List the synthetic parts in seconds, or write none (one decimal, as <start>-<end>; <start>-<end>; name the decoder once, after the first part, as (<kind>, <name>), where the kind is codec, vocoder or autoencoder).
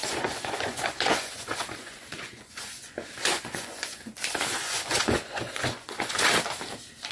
0.0-4.0 (vocoder, Vocos); 4.5-6.2